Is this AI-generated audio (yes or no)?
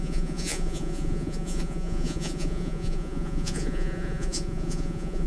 yes